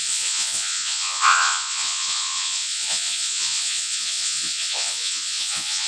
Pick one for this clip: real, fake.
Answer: fake